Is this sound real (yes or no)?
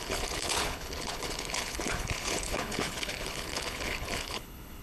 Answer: no